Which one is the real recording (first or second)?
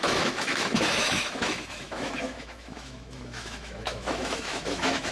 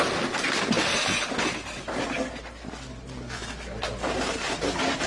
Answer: second